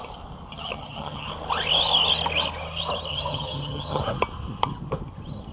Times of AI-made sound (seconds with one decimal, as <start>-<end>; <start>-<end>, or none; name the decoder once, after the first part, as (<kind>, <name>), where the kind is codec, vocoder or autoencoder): 0.5-1.3 (vocoder, HiFi-GAN); 3.1-4.0